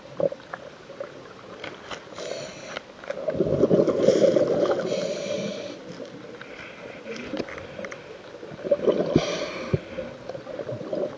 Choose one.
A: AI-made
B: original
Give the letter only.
B